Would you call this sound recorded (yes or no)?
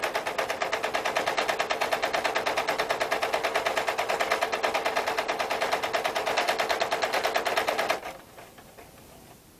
yes